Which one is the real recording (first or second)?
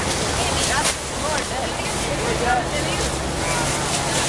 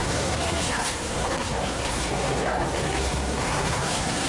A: first